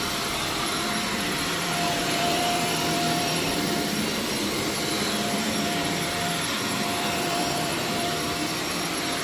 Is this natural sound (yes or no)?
no